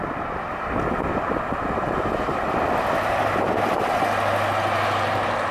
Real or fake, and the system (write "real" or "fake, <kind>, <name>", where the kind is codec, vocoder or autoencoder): real